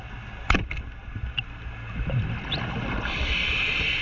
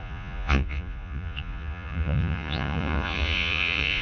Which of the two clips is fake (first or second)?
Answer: second